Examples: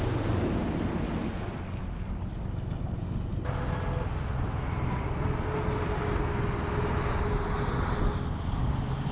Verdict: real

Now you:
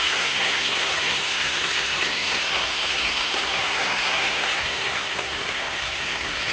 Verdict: fake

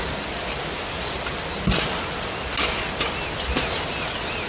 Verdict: real